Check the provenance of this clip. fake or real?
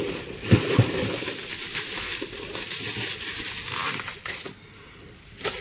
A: real